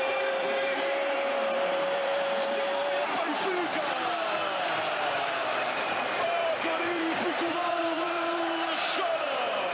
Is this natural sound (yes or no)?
no